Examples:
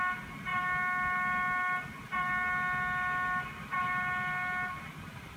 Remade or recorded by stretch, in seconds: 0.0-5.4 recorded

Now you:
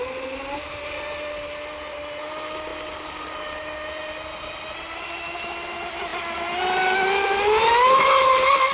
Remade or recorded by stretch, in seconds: 0.0-8.7 recorded

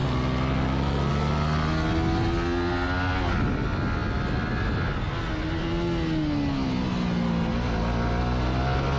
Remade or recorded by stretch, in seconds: 0.0-9.0 recorded

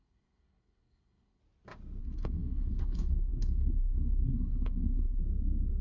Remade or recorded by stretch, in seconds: 0.0-1.4 remade; 1.4-2.0 recorded; 2.0-5.2 remade; 5.2-5.8 recorded

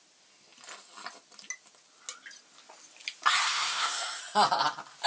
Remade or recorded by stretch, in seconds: 0.0-3.4 recorded; 3.4-4.2 remade; 4.2-5.1 recorded